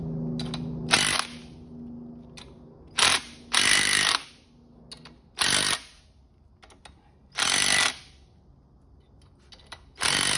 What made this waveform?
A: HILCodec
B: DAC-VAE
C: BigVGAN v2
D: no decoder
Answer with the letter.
D